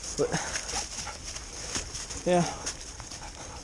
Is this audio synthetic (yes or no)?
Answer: no